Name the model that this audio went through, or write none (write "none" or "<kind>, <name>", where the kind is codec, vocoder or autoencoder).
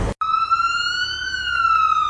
none